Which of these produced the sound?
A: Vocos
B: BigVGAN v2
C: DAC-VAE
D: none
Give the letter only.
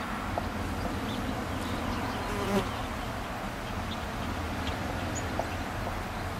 D